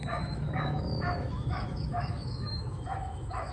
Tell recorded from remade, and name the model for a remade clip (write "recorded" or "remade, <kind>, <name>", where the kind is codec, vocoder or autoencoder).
remade, autoencoder, DAC-VAE